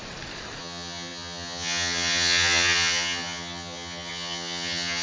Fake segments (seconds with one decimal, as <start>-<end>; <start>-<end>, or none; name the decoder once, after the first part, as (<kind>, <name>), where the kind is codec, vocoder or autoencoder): 0.6-5.0 (vocoder, HiFi-GAN)